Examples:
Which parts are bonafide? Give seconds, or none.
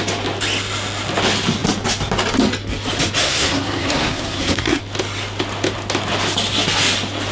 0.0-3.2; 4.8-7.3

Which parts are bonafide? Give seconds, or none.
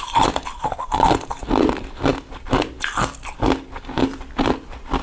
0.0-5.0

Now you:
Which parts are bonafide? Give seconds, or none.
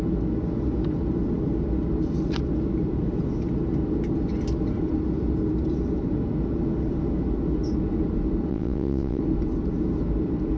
0.0-8.5; 9.2-10.6